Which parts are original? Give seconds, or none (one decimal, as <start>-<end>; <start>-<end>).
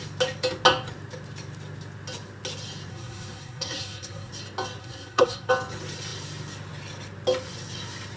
0.0-2.9; 4.3-4.8; 5.5-8.2